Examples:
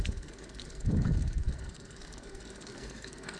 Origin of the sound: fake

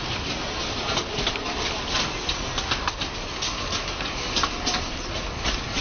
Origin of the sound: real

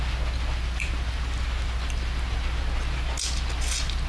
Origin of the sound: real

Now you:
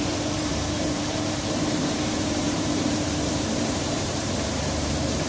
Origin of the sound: fake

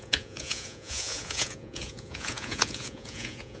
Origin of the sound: fake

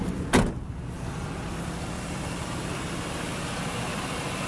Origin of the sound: real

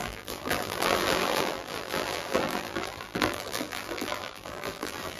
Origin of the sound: fake